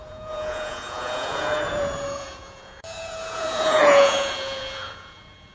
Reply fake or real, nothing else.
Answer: fake